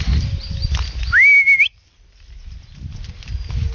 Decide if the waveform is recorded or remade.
recorded